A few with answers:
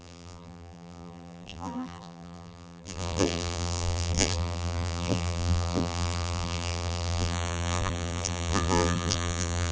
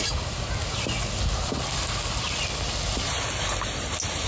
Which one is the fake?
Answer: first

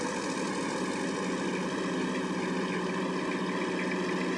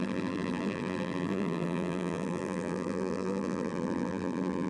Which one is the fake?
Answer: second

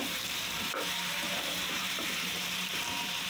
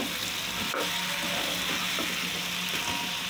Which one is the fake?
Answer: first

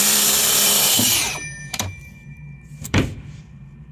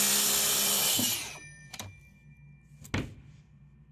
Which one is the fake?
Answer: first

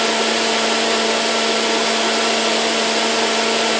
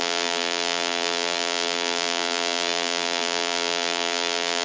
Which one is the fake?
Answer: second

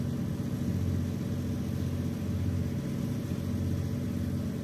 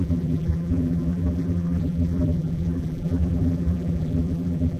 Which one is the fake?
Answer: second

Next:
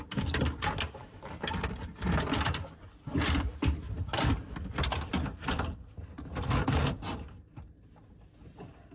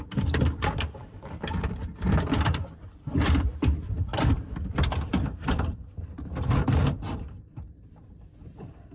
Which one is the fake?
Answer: second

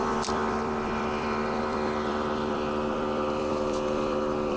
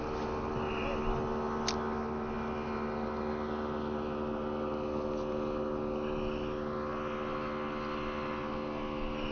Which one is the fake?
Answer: first